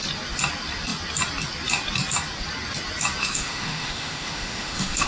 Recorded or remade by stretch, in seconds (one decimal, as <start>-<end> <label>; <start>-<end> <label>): 0.0-3.2 recorded; 3.2-5.1 remade